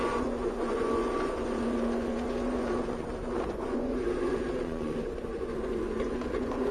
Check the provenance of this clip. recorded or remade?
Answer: remade